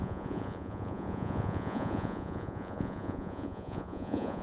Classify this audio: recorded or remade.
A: remade